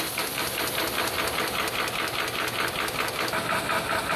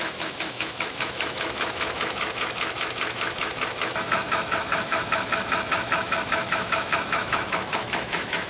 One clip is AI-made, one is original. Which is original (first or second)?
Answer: first